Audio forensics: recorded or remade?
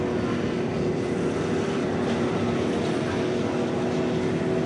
recorded